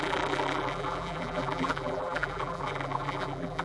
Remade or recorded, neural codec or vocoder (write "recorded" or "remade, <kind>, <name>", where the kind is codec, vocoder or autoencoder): remade, vocoder, BigVGAN v2